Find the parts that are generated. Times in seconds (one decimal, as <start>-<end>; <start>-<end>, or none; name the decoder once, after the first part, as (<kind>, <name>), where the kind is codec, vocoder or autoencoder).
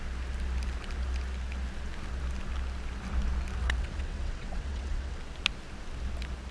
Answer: 3.6-5.2 (vocoder, WaveNeXt)